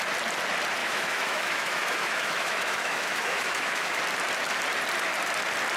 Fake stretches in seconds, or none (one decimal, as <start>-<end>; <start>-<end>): 0.8-4.0